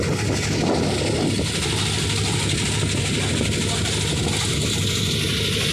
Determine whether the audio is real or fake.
real